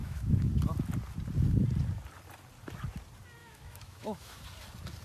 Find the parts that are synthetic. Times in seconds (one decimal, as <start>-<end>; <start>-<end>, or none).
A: 0.0-0.5; 3.4-4.4